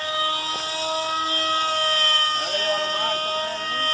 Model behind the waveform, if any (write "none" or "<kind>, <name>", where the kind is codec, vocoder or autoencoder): none